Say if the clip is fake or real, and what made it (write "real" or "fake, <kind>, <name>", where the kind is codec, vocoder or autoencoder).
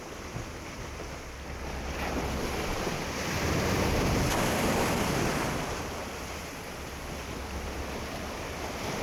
fake, vocoder, BigVGAN v2